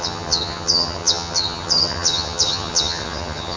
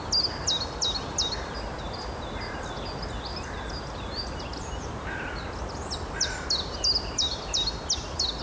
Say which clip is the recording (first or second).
second